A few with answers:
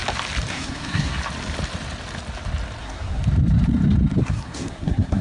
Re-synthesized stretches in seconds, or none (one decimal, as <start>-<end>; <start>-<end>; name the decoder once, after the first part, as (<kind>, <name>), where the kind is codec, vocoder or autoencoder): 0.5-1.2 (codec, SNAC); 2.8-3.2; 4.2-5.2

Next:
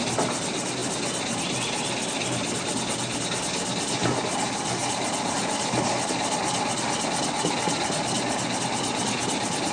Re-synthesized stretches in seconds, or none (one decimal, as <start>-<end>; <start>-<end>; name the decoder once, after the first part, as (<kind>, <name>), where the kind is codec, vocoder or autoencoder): none

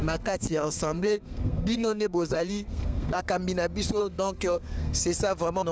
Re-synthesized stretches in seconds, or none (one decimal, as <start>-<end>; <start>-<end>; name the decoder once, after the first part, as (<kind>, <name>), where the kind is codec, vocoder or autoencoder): 0.0-3.2 (codec, SNAC); 4.0-5.0